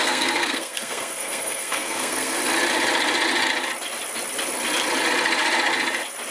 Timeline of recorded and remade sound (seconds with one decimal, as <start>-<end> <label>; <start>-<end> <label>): 0.0-2.4 remade; 2.4-6.3 recorded